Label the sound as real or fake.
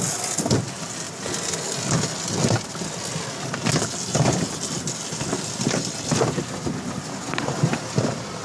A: real